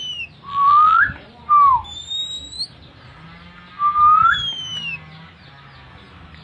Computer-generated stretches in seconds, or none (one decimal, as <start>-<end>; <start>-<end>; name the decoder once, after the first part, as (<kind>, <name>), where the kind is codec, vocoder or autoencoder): 0.5-1.0 (vocoder, BigVGAN v2)